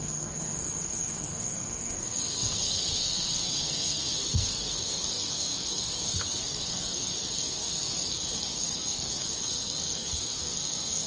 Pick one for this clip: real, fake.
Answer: fake